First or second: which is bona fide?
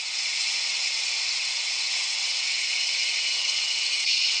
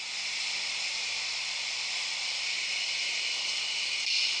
second